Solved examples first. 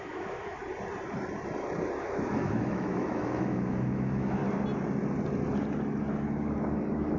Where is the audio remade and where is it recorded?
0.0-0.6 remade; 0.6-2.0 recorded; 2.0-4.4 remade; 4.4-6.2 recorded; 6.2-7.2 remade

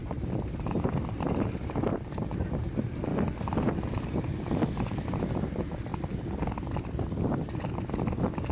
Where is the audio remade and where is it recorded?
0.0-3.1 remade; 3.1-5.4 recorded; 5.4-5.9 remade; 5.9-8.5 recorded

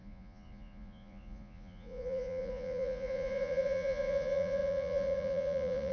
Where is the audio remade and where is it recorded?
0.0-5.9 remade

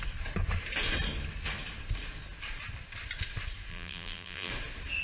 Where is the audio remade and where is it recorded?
0.0-3.7 recorded; 3.7-4.5 remade; 4.5-5.0 recorded

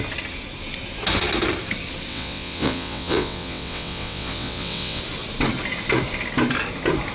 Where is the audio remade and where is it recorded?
0.0-2.1 recorded; 2.1-5.0 remade; 5.0-7.1 recorded

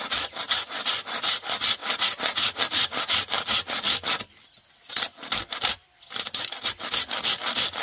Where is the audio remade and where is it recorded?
0.0-7.8 recorded

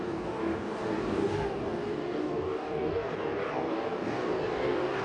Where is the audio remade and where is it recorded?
0.0-5.0 remade

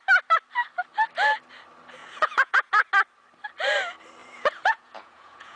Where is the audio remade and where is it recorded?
0.0-2.0 recorded; 2.0-2.9 remade; 2.9-4.2 recorded; 4.2-5.6 remade